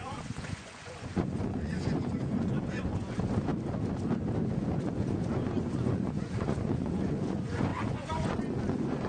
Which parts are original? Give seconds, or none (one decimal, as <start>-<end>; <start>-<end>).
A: 3.5-4.7